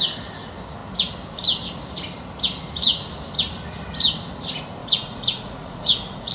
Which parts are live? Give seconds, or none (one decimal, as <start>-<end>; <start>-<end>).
0.0-4.8